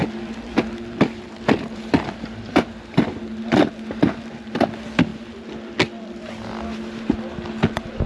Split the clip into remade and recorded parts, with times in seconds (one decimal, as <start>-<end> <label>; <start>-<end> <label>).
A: 0.0-3.7 remade; 3.7-8.1 recorded